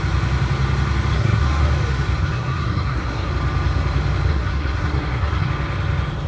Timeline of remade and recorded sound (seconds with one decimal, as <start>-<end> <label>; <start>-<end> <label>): 0.0-1.1 recorded; 1.1-1.6 remade; 1.6-2.2 recorded; 2.2-3.3 remade; 3.3-4.3 recorded; 4.3-5.5 remade; 5.5-6.3 recorded